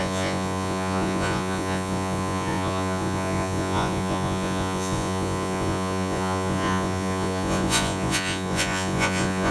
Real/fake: fake